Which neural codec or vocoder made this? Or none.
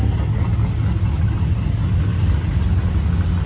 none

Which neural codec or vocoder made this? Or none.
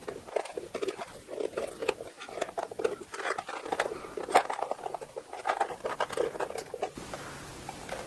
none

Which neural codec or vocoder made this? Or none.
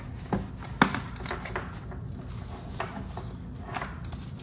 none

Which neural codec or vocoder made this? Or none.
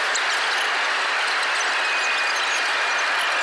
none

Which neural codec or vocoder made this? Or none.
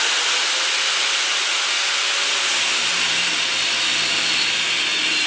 none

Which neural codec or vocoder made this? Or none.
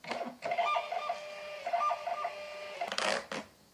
none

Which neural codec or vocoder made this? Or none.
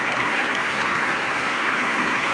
codec, SNAC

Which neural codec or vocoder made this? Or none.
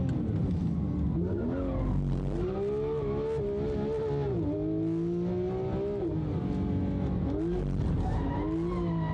none